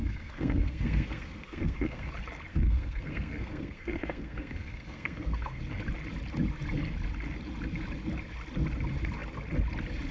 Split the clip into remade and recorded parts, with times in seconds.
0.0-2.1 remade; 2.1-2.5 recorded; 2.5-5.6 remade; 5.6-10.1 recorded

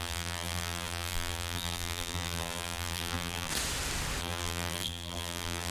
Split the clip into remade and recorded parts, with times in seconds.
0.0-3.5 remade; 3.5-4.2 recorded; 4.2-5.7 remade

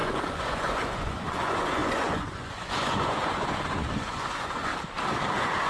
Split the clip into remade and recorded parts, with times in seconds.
0.0-4.7 remade; 4.7-5.3 recorded; 5.3-5.7 remade

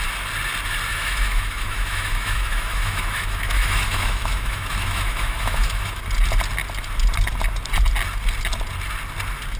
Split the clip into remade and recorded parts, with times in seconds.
0.0-0.9 recorded; 0.9-6.0 remade; 6.0-9.6 recorded